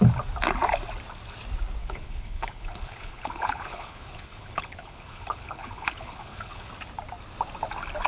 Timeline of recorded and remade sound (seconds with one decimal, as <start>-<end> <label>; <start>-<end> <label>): 0.0-1.8 recorded; 1.8-6.7 remade; 6.7-8.1 recorded

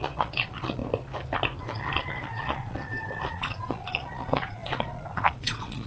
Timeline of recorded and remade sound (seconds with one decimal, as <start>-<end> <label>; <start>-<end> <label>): 0.0-0.8 remade; 0.8-1.6 recorded; 1.6-5.9 remade

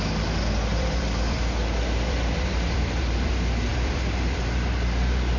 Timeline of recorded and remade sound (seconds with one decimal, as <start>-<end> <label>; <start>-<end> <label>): 0.0-0.7 recorded; 0.7-3.3 remade; 3.3-3.7 recorded; 3.7-4.4 remade; 4.4-5.4 recorded

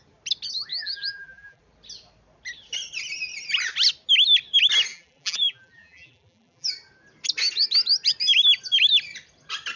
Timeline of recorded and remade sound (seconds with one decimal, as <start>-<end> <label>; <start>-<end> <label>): 0.0-0.7 recorded; 0.7-1.6 remade; 1.6-4.9 recorded; 4.9-6.7 remade; 6.7-9.8 recorded

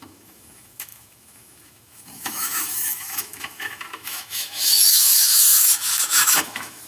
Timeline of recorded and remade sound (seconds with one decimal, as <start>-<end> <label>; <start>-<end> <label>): 0.0-6.9 remade

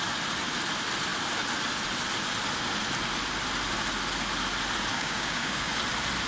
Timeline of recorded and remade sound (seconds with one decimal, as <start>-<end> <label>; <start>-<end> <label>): 0.0-4.9 recorded; 4.9-5.7 remade; 5.7-6.3 recorded

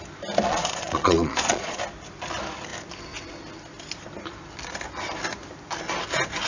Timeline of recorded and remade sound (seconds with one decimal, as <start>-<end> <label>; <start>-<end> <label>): 0.0-0.5 recorded; 0.5-1.8 remade; 1.8-6.5 recorded